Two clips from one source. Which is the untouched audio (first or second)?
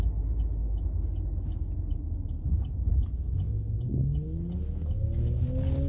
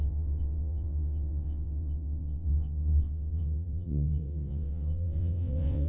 first